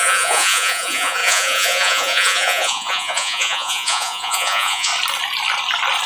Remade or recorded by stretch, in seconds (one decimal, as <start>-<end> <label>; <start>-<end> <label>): 0.0-4.9 remade; 4.9-6.1 recorded